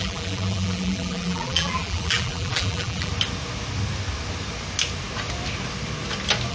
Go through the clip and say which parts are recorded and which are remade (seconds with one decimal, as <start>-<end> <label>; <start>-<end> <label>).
0.0-3.1 remade; 3.1-6.5 recorded